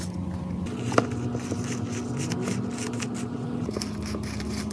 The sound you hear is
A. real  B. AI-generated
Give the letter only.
A